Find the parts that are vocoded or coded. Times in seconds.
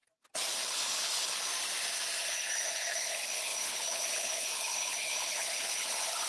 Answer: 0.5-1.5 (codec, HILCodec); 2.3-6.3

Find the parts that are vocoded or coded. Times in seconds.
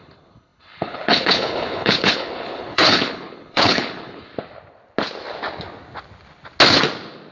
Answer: 0.0-4.3 (codec, HILCodec)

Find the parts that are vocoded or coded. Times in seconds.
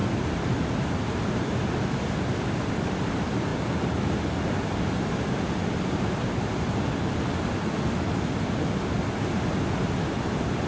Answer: none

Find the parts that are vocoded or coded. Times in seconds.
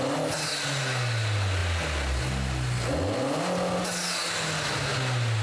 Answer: none